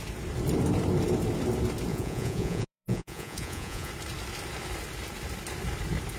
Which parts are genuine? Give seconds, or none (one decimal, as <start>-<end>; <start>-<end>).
0.0-1.9; 3.9-6.2